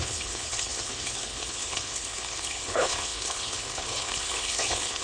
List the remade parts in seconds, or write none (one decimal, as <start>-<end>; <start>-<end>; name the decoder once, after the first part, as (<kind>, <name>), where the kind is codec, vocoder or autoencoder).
0.0-5.0 (codec, HILCodec)